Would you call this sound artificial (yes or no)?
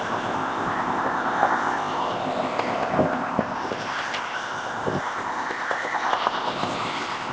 yes